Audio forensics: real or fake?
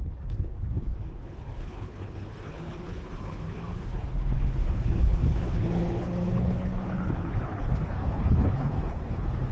fake